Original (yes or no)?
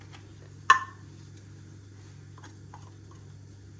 yes